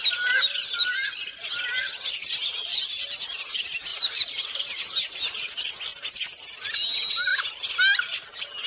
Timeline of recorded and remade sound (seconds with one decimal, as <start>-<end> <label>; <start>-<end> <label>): 0.0-2.7 recorded; 2.7-3.4 remade; 3.4-3.9 recorded; 3.9-5.1 remade; 5.1-5.9 recorded; 5.9-6.4 remade; 6.4-8.7 recorded